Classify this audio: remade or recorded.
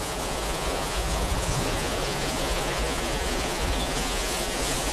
remade